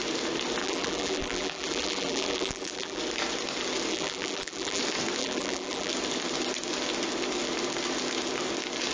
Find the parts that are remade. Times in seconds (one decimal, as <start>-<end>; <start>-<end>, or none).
0.6-3.0; 3.9-4.8; 5.2-5.9